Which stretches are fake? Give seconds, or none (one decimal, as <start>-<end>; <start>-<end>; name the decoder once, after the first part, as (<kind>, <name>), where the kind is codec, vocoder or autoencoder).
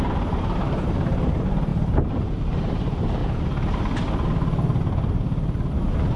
0.0-3.2 (vocoder, BigVGAN v2)